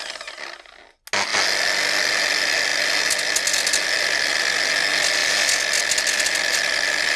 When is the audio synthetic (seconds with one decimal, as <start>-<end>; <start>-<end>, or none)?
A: none